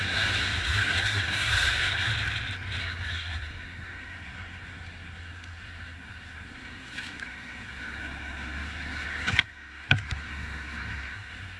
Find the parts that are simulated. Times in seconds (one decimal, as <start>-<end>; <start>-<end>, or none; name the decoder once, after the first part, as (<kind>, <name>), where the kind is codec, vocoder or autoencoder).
0.0-2.1 (codec, SNAC); 2.8-11.6